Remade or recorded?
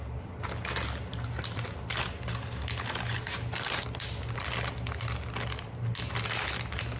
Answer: recorded